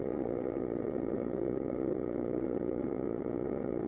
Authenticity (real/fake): fake